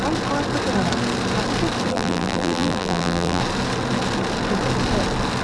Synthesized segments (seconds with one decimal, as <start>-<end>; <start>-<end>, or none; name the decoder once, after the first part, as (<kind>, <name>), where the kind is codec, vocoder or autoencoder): 1.9-3.4 (vocoder, BigVGAN v2)